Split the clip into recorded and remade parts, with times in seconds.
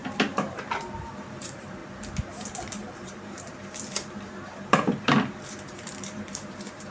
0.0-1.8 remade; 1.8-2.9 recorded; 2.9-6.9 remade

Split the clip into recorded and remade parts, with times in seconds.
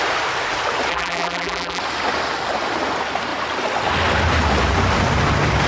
0.0-0.9 recorded; 0.9-1.8 remade; 1.8-5.7 recorded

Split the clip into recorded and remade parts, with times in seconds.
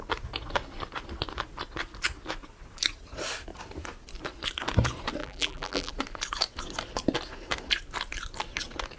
0.0-5.2 recorded; 5.2-5.9 remade; 5.9-9.0 recorded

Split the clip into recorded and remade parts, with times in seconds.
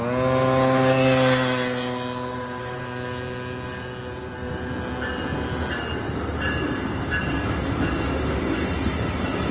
0.0-2.3 recorded; 2.3-2.8 remade; 2.8-9.5 recorded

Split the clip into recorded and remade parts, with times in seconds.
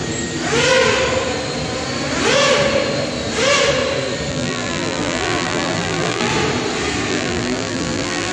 0.0-4.3 recorded; 4.3-6.3 remade; 6.3-7.1 recorded; 7.1-8.3 remade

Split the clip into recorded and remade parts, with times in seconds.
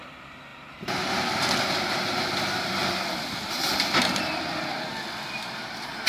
0.0-0.5 recorded; 0.5-4.2 remade; 4.2-6.1 recorded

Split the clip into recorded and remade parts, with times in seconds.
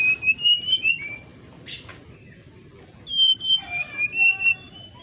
0.0-0.9 remade; 0.9-3.1 recorded; 3.1-5.0 remade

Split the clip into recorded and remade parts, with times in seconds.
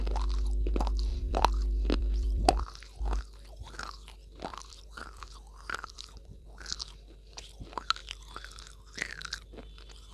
0.0-1.1 recorded; 1.1-2.6 remade; 2.6-4.5 recorded; 4.5-6.8 remade; 6.8-10.1 recorded